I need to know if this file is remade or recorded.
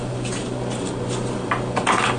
recorded